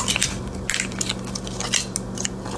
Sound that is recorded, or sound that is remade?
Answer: recorded